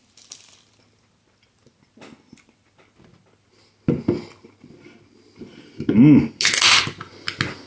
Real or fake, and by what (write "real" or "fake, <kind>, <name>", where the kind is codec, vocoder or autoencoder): real